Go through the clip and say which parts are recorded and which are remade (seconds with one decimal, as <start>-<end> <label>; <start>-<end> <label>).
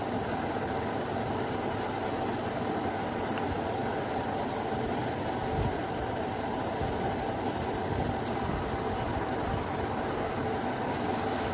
0.0-9.7 recorded; 9.7-11.1 remade; 11.1-11.5 recorded